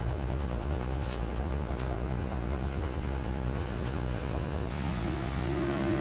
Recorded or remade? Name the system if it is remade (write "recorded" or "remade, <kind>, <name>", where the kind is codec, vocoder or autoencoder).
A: remade, vocoder, Vocos